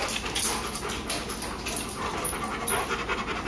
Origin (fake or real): real